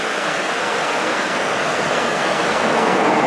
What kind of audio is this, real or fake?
fake